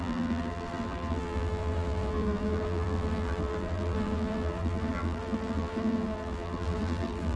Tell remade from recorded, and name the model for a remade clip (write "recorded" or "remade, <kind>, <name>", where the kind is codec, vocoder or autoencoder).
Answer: remade, vocoder, BigVGAN v2